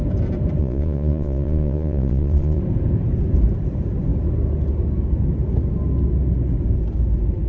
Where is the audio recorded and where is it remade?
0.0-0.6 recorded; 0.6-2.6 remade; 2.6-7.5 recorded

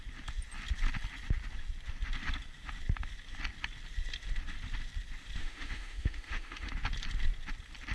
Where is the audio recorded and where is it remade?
0.0-5.4 recorded; 5.4-6.7 remade; 6.7-7.9 recorded